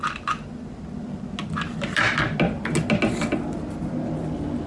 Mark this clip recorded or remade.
recorded